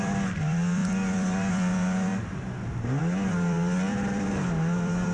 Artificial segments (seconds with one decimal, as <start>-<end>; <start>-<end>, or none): 0.0-2.1; 3.0-5.1